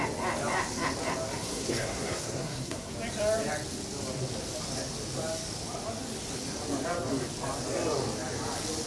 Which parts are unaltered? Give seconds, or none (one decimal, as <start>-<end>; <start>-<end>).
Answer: 0.0-1.4; 2.9-8.9